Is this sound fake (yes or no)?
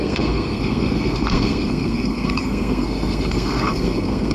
yes